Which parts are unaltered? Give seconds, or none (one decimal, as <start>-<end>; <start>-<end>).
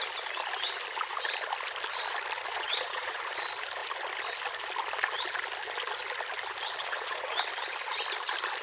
0.0-2.5; 3.3-6.8; 7.3-8.6